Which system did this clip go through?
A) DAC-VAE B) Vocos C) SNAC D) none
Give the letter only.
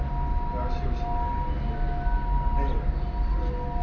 D